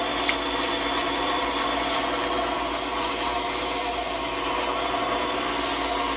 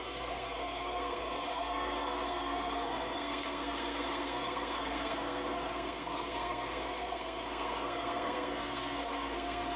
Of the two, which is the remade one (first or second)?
second